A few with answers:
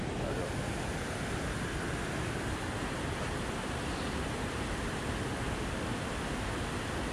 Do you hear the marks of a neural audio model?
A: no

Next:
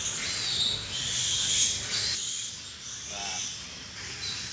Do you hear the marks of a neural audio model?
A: no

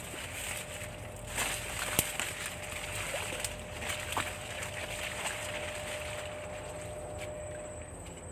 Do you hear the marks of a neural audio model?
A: no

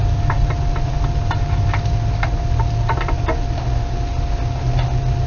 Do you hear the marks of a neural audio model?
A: no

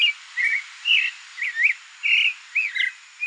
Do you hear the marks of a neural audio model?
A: no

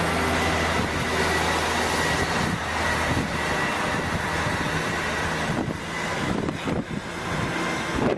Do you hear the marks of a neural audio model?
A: no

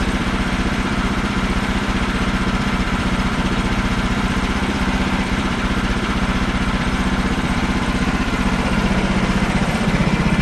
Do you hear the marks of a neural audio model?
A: yes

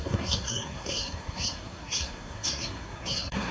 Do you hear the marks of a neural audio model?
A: yes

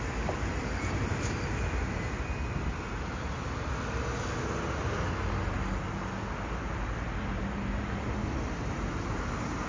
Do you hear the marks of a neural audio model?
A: no